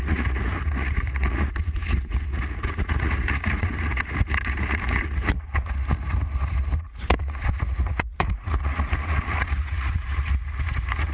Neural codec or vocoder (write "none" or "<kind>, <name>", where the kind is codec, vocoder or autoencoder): vocoder, Vocos